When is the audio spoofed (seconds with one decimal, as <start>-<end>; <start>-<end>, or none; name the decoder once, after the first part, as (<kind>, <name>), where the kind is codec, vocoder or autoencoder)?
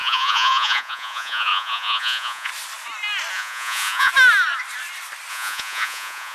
0.0-2.5 (vocoder, Vocos); 3.3-4.1; 5.3-6.3